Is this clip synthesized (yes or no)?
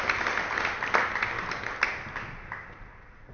no